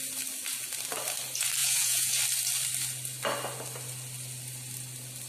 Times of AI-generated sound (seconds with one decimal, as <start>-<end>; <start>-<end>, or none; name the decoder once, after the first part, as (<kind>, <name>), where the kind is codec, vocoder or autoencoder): 1.6-2.2 (vocoder, Vocos)